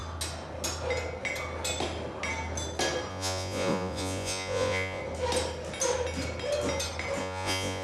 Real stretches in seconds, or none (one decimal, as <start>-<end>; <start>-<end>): 0.0-3.1; 5.0-7.2